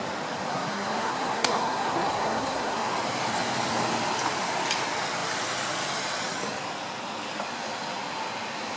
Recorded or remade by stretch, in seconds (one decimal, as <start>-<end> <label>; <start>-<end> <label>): 0.0-0.5 recorded; 0.5-2.9 remade; 2.9-8.8 recorded